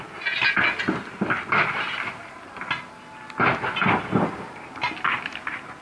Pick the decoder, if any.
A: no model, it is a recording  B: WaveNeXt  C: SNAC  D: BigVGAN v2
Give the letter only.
A